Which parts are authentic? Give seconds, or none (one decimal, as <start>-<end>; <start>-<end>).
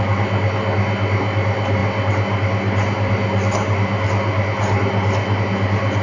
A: 0.0-6.0